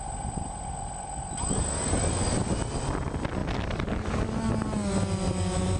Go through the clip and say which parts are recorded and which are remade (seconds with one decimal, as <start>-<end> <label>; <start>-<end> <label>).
0.0-5.8 recorded